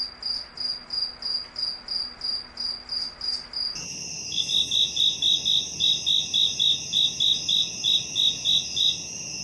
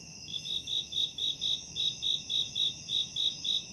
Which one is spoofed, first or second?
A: second